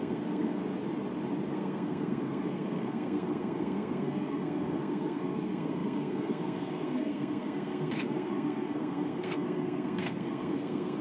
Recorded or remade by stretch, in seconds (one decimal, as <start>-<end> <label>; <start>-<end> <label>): 0.0-0.6 remade; 0.6-1.5 recorded; 1.5-11.0 remade